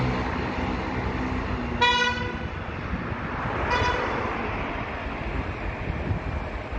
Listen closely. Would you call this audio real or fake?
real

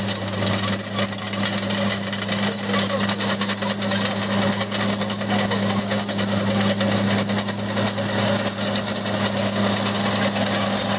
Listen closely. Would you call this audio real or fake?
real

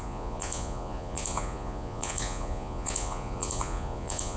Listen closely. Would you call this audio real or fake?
fake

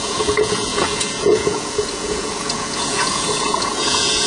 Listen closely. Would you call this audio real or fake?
fake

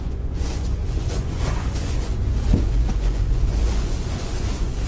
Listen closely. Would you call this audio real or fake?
fake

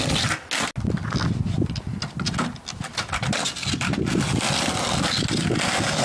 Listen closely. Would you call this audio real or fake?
real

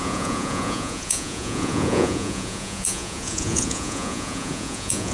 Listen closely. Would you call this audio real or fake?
fake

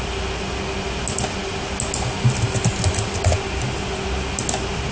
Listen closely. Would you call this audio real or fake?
real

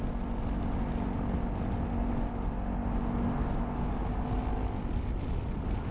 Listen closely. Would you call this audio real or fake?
real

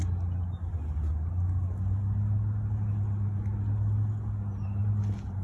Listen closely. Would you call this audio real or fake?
real